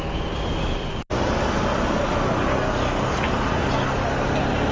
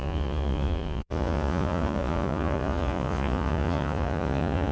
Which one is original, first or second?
first